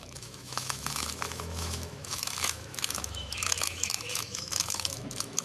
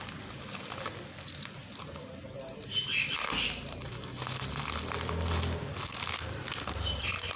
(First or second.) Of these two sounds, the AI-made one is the first